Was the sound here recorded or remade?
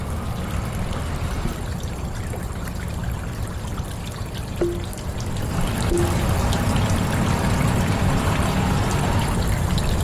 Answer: recorded